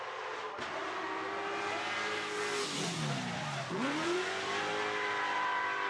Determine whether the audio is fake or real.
real